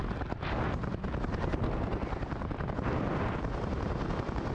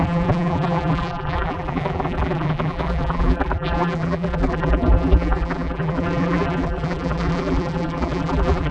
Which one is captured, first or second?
first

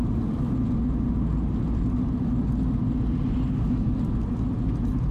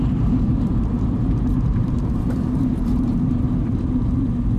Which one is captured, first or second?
first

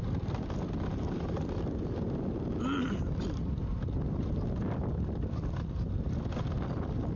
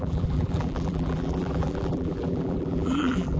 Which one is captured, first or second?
first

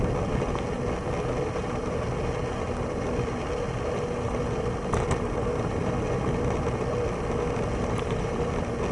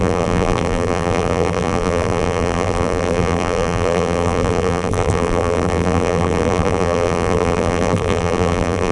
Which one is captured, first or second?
first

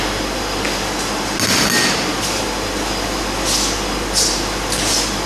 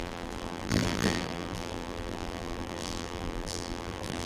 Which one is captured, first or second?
first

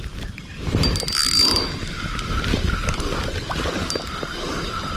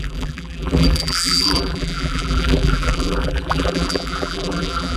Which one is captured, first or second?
first